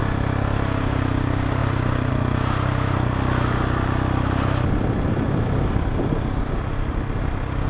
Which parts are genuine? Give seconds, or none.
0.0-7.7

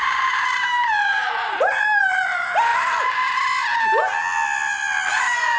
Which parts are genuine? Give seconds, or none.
2.7-5.1

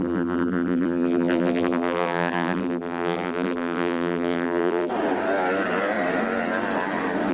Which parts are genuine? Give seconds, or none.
4.9-7.3

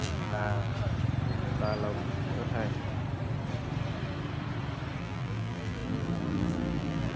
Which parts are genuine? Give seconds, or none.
0.7-5.0

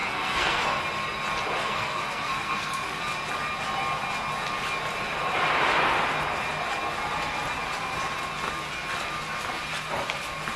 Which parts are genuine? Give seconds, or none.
0.8-1.6; 3.0-10.6

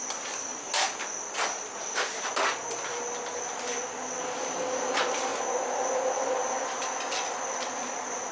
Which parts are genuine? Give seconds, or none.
0.0-8.3

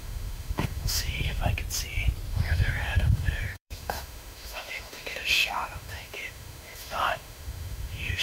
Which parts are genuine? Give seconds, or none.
1.4-2.3

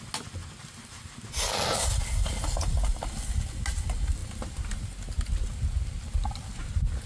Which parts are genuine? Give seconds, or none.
0.0-7.1